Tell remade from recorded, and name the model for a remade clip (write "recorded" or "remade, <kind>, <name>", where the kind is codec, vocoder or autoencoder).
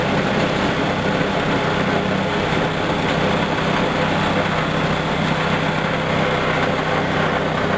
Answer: recorded